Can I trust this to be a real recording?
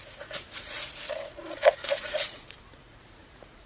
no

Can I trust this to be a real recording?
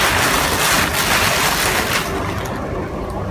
yes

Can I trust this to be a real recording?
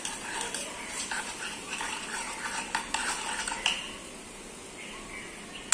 yes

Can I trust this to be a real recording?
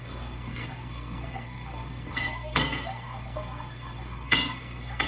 no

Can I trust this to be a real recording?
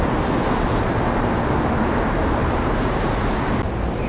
yes